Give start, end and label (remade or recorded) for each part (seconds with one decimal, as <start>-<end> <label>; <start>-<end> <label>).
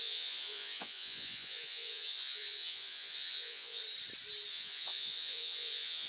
0.0-3.8 remade; 3.8-4.5 recorded; 4.5-6.1 remade